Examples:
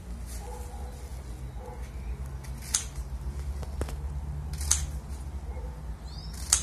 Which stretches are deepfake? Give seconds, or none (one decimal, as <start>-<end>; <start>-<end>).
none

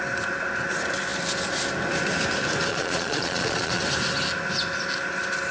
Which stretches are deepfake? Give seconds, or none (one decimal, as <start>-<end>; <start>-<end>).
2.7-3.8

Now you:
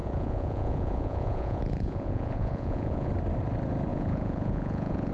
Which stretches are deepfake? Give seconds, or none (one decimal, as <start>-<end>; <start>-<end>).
0.0-3.1; 3.9-5.1

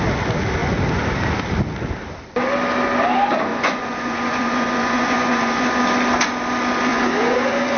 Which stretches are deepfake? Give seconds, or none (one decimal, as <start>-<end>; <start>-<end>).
3.5-5.7; 6.9-7.8

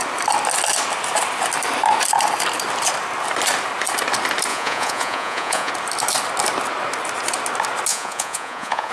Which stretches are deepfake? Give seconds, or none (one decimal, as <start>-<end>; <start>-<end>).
4.5-5.7; 7.9-8.9

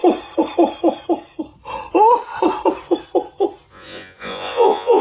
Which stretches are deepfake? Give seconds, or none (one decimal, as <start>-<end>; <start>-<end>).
3.7-5.0